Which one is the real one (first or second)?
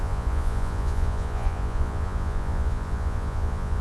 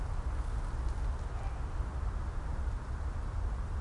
second